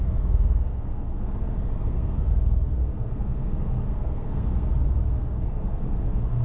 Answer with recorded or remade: remade